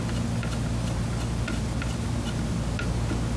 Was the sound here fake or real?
real